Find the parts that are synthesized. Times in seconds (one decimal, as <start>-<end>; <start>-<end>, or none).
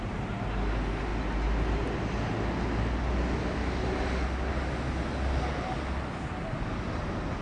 none